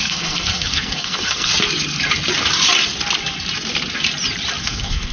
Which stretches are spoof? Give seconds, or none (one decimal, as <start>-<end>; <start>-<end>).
0.0-1.5; 4.6-5.1